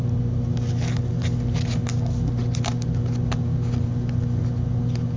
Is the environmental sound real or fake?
real